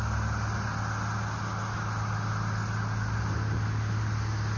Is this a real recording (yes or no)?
yes